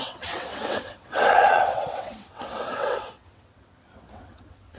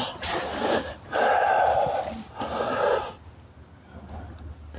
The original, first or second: second